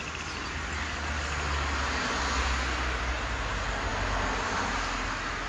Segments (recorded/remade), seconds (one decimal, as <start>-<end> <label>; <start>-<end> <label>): 0.0-5.5 recorded